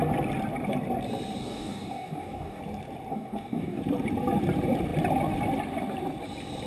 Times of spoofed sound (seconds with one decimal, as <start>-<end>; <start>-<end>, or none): 1.4-2.6; 3.1-3.8